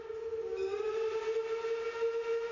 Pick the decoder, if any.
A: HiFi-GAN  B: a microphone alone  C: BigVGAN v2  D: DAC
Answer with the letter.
B